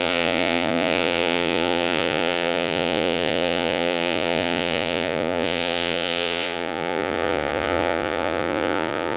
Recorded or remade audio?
remade